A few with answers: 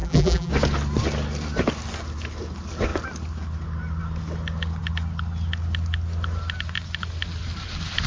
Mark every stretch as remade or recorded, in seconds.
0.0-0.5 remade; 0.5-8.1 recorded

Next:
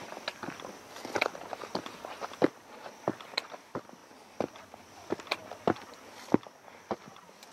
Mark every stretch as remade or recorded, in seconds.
0.0-7.5 recorded

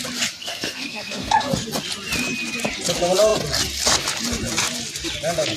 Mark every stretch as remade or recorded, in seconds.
0.0-0.4 recorded; 0.4-1.5 remade; 1.5-5.6 recorded

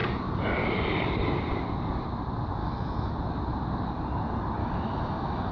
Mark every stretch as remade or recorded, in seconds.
0.0-2.6 recorded; 2.6-3.1 remade; 3.1-4.6 recorded; 4.6-5.5 remade